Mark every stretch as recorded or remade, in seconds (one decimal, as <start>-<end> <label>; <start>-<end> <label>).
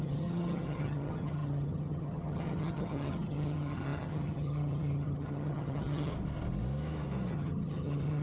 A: 0.0-6.1 remade; 6.1-7.3 recorded; 7.3-8.2 remade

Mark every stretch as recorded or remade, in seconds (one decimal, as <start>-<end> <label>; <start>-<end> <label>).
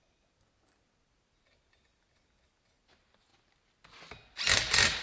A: 0.0-5.0 recorded